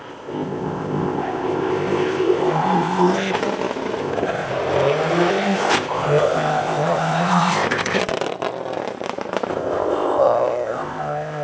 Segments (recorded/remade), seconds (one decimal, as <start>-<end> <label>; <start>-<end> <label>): 0.0-3.4 remade; 3.4-4.0 recorded; 4.0-4.5 remade; 4.5-5.3 recorded; 5.3-8.0 remade; 8.0-9.5 recorded; 9.5-11.4 remade